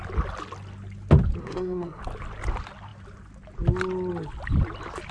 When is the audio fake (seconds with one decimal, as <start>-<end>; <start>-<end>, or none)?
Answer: 1.4-2.0